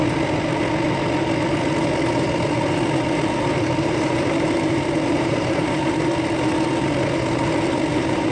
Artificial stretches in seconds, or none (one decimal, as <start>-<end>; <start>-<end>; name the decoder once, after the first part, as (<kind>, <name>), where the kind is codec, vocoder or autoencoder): 3.8-6.1 (vocoder, BigVGAN v2); 7.9-8.3